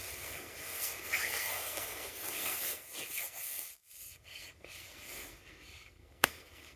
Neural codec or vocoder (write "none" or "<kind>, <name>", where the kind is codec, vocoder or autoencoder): codec, SNAC